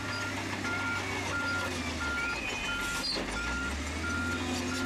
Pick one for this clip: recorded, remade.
recorded